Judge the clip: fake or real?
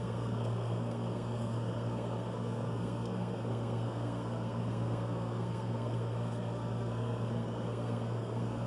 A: fake